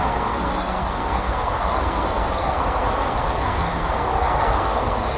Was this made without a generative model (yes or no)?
no